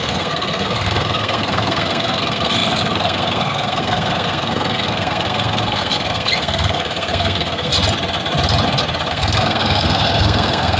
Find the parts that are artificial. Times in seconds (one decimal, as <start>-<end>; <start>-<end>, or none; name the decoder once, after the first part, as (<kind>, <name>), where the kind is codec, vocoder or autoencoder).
0.0-7.7 (codec, SNAC); 9.1-10.8

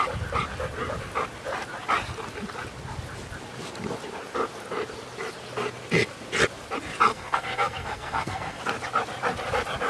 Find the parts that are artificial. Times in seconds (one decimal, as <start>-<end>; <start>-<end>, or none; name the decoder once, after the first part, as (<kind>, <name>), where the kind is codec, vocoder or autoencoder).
7.1-8.6 (codec, SNAC)

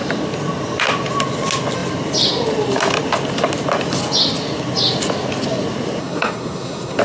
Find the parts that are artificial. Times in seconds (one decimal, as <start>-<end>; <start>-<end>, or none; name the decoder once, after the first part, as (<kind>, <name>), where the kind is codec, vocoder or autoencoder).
6.0-7.0 (codec, SNAC)

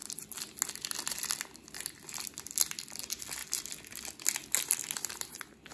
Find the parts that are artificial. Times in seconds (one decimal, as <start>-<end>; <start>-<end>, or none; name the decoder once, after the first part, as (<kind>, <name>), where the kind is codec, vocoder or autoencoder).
none

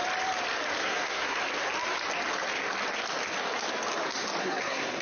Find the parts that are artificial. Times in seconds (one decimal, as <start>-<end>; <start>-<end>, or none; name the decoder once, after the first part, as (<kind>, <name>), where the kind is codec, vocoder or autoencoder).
0.8-1.4 (codec, SNAC); 4.4-5.0

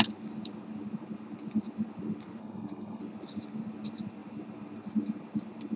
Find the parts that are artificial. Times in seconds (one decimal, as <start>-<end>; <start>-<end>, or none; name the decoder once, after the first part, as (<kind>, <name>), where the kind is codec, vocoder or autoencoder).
2.4-3.0 (codec, SNAC)

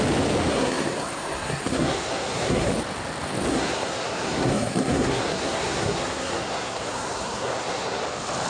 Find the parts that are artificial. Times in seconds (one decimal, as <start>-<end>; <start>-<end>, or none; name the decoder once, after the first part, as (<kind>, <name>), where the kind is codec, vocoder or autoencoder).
0.5-2.7 (codec, SNAC); 3.5-8.0